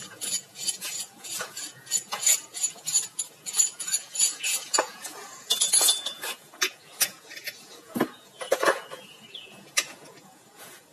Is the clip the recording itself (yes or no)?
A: no